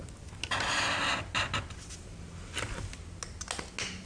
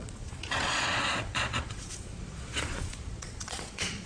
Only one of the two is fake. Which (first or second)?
second